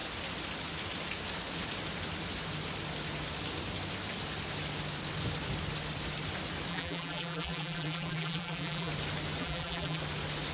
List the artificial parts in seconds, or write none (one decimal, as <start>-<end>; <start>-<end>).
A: 6.7-8.9; 9.4-10.0